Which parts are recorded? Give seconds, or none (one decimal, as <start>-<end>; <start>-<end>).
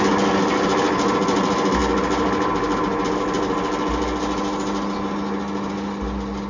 0.0-6.5